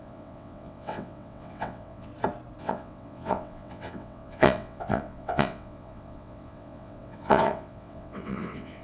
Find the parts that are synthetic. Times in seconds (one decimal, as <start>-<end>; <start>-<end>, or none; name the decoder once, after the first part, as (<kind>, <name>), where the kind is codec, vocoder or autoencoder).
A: 0.0-2.1 (vocoder, WaveNeXt); 2.6-8.8